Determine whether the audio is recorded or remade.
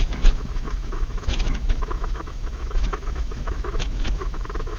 remade